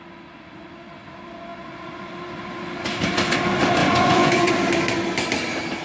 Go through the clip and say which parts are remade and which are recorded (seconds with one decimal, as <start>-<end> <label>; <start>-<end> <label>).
0.0-3.8 recorded; 3.8-4.5 remade; 4.5-5.8 recorded